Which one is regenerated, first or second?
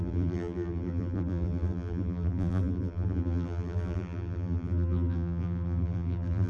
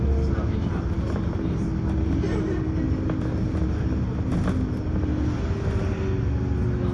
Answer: first